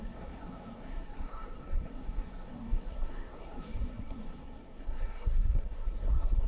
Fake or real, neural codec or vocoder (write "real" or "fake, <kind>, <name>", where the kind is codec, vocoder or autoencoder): fake, codec, SNAC